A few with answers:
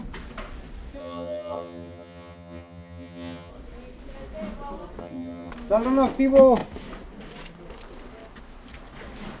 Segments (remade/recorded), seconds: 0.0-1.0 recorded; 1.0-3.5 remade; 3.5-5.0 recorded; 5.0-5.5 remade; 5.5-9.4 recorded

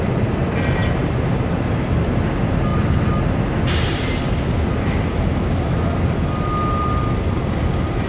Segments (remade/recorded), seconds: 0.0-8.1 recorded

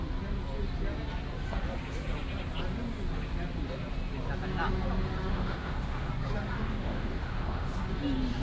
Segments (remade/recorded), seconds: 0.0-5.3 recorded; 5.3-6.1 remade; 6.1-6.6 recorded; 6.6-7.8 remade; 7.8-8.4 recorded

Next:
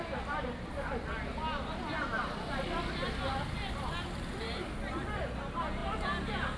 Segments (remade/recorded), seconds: 0.0-6.6 recorded

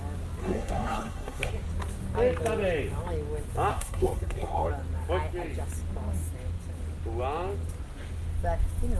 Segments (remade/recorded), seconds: 0.0-0.4 recorded; 0.4-1.5 remade; 1.5-3.7 recorded; 3.7-4.7 remade; 4.7-9.0 recorded

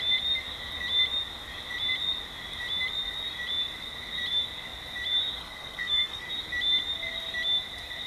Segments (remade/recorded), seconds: 0.0-5.4 recorded; 5.4-6.3 remade; 6.3-8.1 recorded

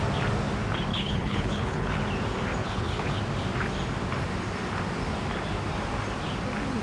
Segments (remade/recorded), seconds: 0.0-0.9 recorded; 0.9-2.0 remade; 2.0-2.6 recorded; 2.6-3.2 remade; 3.2-6.8 recorded